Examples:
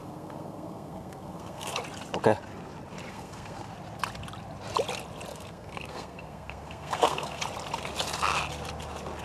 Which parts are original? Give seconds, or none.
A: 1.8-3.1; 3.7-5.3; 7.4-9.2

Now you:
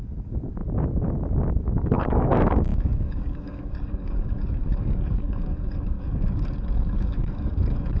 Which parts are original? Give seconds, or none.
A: 0.6-1.6